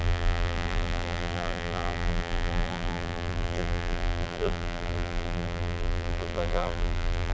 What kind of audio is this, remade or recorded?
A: remade